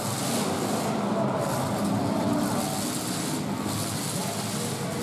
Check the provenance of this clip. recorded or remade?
recorded